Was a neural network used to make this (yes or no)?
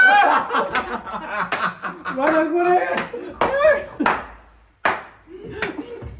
no